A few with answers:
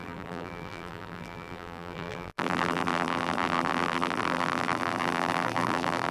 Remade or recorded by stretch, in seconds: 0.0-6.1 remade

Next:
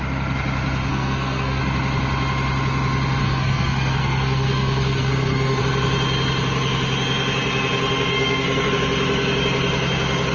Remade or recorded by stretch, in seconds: 0.0-0.9 recorded; 0.9-1.6 remade; 1.6-3.2 recorded; 3.2-5.6 remade; 5.6-8.1 recorded; 8.1-8.7 remade; 8.7-10.3 recorded

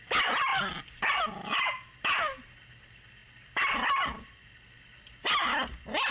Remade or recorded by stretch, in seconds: 0.0-6.1 recorded

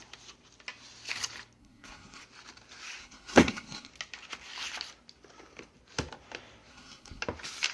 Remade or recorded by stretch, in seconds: 0.0-1.6 recorded; 1.6-2.2 remade; 2.2-3.0 recorded; 3.0-3.9 remade; 3.9-6.7 recorded; 6.7-7.2 remade; 7.2-7.7 recorded

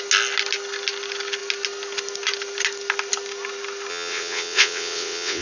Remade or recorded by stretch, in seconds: 0.0-3.9 recorded; 3.9-5.4 remade

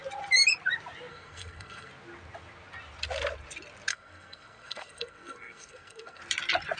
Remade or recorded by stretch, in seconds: 0.0-1.1 recorded; 1.1-1.9 remade; 1.9-3.9 recorded; 3.9-6.2 remade; 6.2-6.8 recorded